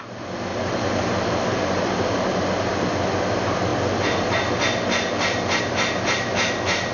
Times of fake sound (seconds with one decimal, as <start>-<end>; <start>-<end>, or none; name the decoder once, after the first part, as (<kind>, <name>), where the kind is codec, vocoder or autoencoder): 0.5-2.4 (vocoder, BigVGAN v2)